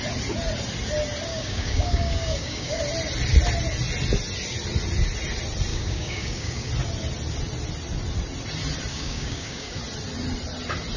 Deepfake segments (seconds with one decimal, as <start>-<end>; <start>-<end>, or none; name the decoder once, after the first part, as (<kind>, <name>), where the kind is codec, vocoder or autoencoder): 1.3-2.8 (codec, DAC); 5.7-6.7; 8.9-9.8